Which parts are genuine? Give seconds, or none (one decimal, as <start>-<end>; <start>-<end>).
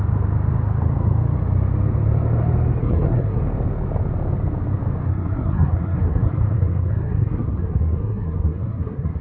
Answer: 0.0-2.8; 3.4-5.1